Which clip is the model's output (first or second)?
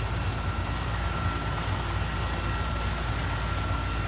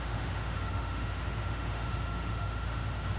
second